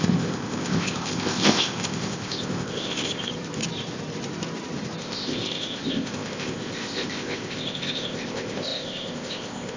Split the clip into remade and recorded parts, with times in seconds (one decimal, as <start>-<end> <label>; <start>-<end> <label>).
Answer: 0.0-3.3 remade; 3.3-5.0 recorded; 5.0-9.8 remade